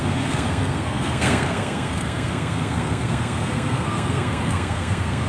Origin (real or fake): fake